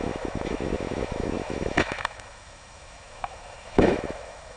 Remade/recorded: remade